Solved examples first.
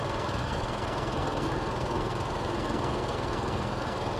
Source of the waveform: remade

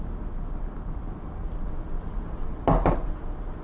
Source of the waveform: recorded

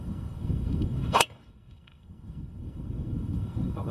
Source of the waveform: remade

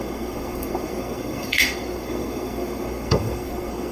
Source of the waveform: remade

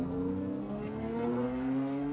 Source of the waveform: remade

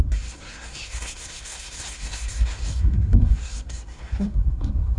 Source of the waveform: remade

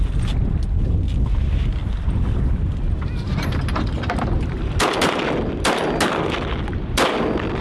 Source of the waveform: recorded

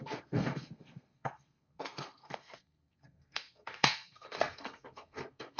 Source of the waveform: remade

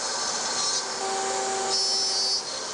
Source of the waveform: recorded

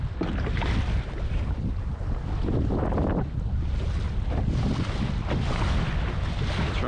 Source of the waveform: recorded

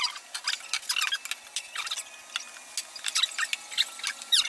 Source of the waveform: recorded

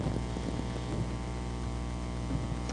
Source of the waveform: recorded